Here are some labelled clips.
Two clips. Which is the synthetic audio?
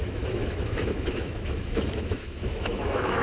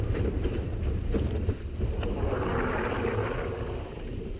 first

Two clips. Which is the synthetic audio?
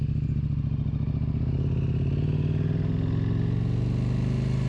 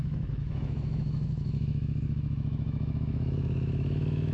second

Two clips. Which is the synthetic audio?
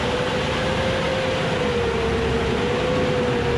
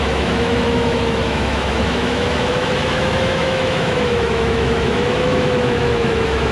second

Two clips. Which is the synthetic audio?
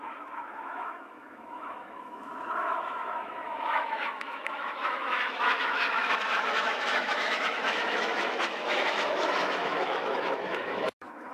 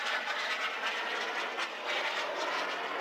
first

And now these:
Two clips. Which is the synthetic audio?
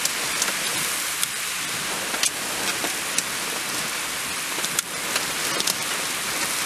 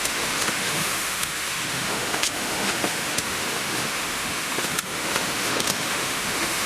second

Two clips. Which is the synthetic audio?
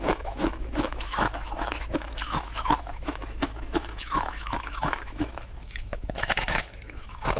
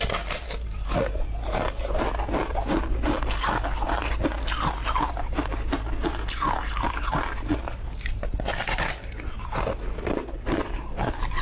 first